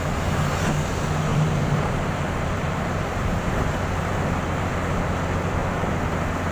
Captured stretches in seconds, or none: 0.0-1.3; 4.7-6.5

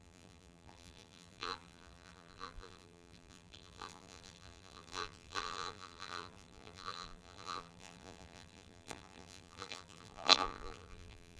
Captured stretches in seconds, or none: none

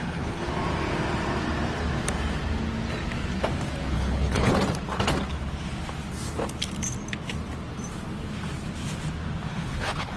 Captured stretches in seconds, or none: 0.5-3.9; 4.5-9.5

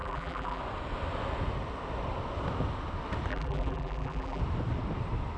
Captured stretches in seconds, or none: 0.6-3.3; 4.4-5.4

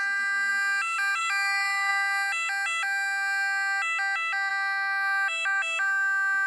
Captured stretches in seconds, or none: 0.0-6.5

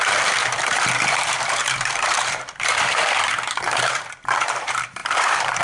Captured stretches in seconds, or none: none

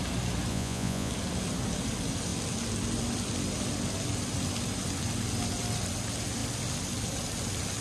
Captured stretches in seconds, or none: 0.0-0.5; 1.1-7.8

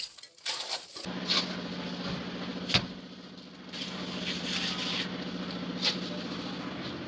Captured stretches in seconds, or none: 0.0-7.1